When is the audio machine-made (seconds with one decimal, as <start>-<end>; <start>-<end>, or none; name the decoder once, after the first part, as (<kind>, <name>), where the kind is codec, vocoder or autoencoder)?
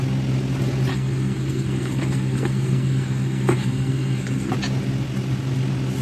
0.9-4.5 (codec, SNAC)